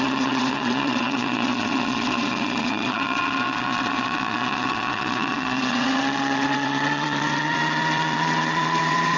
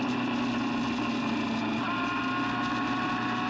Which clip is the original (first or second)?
second